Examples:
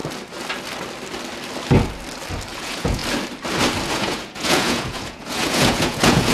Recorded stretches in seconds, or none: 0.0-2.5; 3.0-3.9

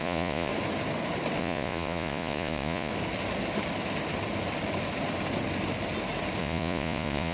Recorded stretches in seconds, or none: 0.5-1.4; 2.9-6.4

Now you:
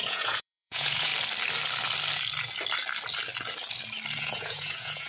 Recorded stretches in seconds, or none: 1.1-4.2

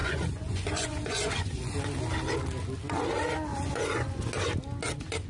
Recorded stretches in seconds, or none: 1.7-3.5; 4.2-5.3

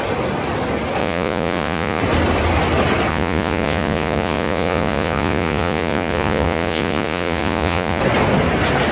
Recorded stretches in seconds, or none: 0.0-1.0; 2.0-3.1; 8.0-8.9

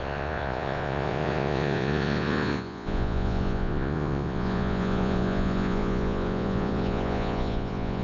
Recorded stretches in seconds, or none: none